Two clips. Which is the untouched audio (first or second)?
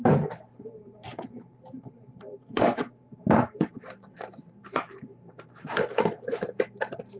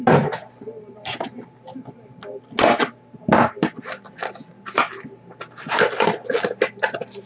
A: second